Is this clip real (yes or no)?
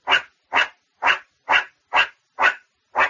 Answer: yes